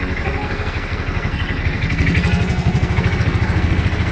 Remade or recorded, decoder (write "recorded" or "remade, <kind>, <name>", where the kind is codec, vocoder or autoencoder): remade, codec, SNAC